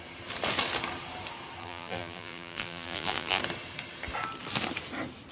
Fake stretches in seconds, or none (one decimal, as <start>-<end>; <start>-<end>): 1.6-3.4

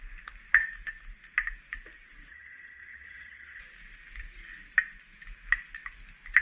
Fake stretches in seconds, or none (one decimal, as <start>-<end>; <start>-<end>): 2.3-3.6